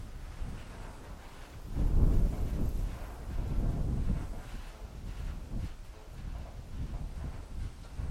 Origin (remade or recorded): recorded